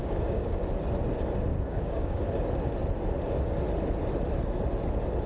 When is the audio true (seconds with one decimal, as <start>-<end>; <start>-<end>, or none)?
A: 0.6-1.5; 2.2-5.3